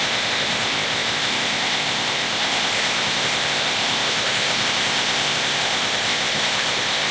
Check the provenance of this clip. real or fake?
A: fake